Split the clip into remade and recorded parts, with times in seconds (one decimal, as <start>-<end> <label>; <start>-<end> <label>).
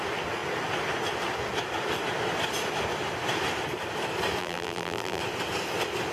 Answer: 0.0-4.4 recorded; 4.4-5.2 remade; 5.2-6.1 recorded